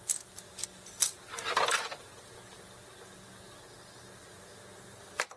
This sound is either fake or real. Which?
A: real